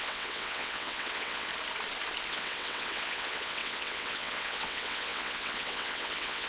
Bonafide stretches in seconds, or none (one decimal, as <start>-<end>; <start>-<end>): 1.5-2.3